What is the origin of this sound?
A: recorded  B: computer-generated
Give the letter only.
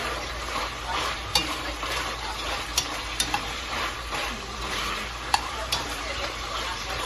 B